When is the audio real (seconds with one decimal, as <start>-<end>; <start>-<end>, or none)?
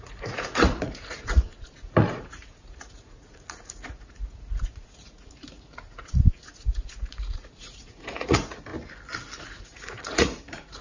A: 8.7-9.4